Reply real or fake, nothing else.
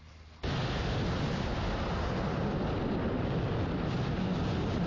real